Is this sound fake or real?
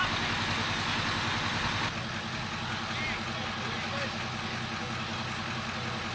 real